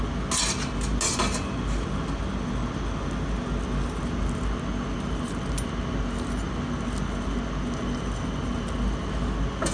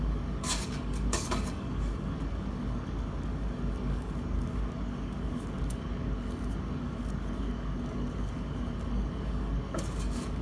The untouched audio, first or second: first